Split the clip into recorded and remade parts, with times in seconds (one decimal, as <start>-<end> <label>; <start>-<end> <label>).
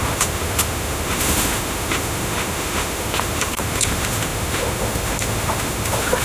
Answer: 0.0-6.2 remade